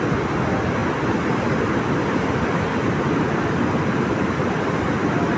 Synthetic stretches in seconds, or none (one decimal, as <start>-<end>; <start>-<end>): none